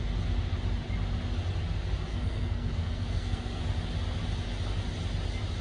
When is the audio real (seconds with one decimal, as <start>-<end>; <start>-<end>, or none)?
0.0-2.1; 3.6-5.6